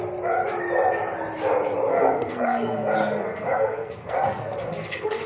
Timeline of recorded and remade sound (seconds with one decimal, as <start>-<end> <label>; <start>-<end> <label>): 0.0-1.9 recorded; 1.9-5.3 remade